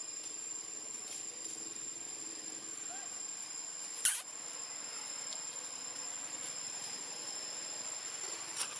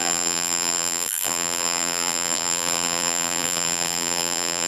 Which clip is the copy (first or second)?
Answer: second